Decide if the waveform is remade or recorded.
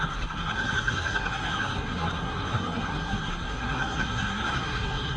remade